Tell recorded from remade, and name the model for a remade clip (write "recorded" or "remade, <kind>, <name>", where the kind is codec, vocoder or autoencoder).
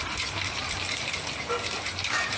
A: remade, vocoder, BigVGAN v2